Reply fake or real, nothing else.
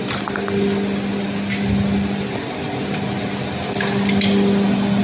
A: real